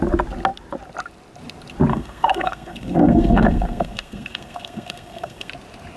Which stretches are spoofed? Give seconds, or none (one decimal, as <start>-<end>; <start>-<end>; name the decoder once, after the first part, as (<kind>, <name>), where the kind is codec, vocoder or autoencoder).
1.9-5.5 (codec, SNAC)